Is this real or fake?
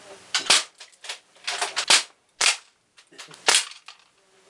real